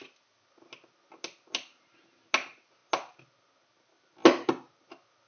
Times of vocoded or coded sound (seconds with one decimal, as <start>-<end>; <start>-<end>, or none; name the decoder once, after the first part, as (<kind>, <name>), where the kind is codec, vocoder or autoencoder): none